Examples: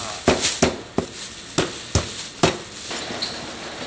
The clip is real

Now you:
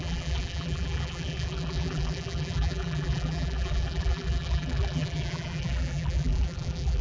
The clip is fake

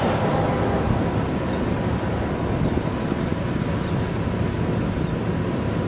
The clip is real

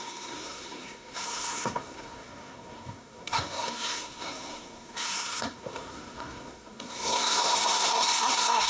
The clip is fake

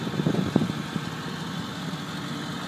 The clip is real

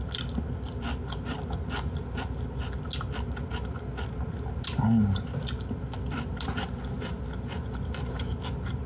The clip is real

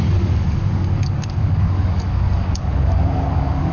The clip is fake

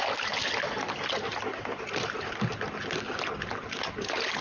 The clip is real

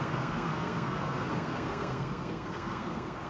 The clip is fake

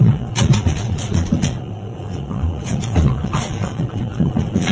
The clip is fake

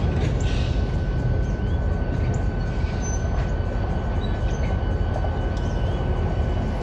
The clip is real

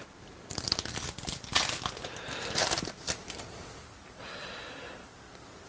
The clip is real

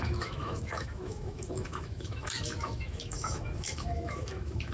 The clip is fake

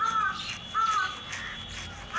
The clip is real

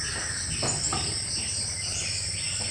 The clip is real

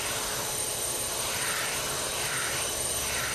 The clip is fake